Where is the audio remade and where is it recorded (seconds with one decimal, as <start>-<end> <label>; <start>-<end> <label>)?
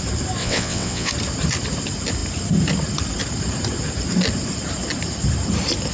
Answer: 0.0-0.4 recorded; 0.4-1.1 remade; 1.1-5.9 recorded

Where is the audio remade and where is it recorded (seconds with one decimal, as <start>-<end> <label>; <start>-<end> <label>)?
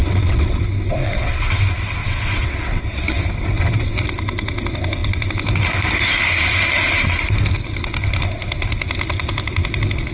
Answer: 0.0-0.6 remade; 0.6-1.0 recorded; 1.0-1.5 remade; 1.5-2.0 recorded; 2.0-3.2 remade; 3.2-10.1 recorded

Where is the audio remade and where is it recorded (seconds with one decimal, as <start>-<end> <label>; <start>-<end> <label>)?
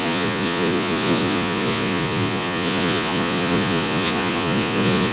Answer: 0.0-5.1 remade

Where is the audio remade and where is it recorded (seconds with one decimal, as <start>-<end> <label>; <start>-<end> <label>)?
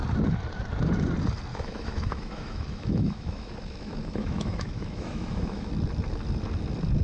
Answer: 0.0-1.5 recorded; 1.5-5.7 remade; 5.7-7.0 recorded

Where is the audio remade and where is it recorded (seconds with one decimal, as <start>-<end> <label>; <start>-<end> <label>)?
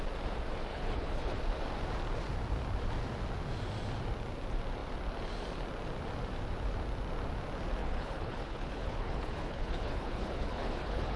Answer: 0.0-0.7 recorded; 0.7-1.4 remade; 1.4-7.8 recorded; 7.8-11.2 remade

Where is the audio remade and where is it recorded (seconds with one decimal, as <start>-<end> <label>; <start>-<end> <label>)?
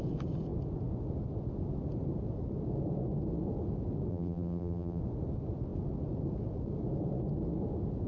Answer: 0.0-4.1 recorded; 4.1-5.0 remade; 5.0-8.1 recorded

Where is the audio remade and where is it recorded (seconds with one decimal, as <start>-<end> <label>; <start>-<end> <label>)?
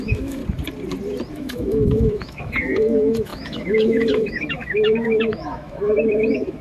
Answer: 0.0-0.4 remade; 0.4-1.3 recorded; 1.3-6.6 remade